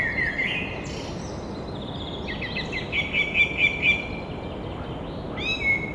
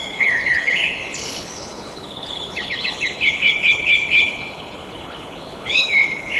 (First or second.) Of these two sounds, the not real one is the second